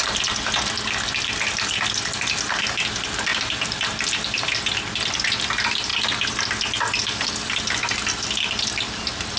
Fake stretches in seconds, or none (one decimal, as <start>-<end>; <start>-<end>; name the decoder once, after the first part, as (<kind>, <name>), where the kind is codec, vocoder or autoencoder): none